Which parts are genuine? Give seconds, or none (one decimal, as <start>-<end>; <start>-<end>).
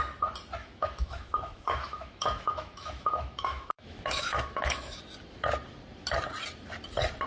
0.0-0.6; 5.0-7.3